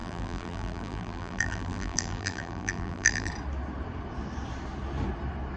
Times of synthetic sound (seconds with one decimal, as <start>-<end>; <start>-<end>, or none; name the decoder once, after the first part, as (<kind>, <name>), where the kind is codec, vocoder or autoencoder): 0.0-3.3 (vocoder, BigVGAN v2)